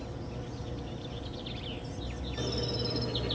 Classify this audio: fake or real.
real